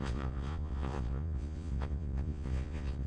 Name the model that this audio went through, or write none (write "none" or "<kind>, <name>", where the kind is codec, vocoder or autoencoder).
vocoder, Vocos